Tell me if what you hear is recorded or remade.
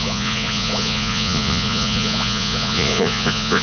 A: remade